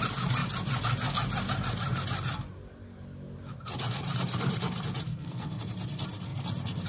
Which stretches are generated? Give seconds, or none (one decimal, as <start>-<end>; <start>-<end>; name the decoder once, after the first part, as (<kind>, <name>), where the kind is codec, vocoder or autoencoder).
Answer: 5.1-5.6 (codec, SNAC)